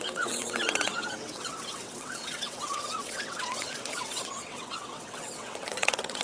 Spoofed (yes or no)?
yes